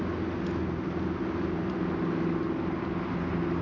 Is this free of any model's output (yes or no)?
yes